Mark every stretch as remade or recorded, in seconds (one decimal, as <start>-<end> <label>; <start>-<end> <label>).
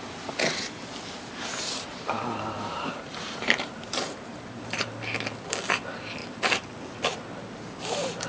0.0-1.5 recorded; 1.5-4.6 remade; 4.6-8.3 recorded